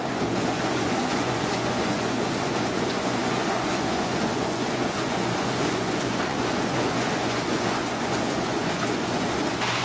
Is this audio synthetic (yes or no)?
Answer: yes